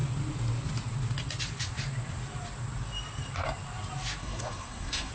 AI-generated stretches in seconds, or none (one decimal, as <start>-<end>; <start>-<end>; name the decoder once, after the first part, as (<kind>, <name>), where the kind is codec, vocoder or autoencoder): 4.2-5.1 (codec, SNAC)